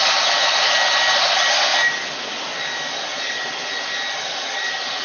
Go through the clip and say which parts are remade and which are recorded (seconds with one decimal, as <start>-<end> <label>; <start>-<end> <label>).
0.0-5.0 recorded